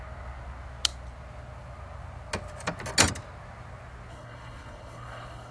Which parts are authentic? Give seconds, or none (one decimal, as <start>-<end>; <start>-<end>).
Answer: 0.0-4.1